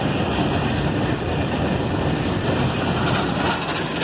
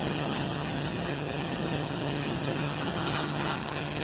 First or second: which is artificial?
second